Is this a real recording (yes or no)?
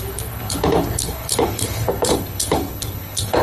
no